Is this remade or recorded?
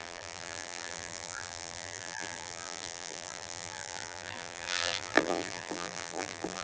remade